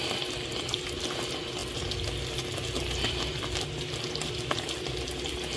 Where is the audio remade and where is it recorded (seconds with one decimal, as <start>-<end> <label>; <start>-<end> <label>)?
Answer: 0.0-5.6 recorded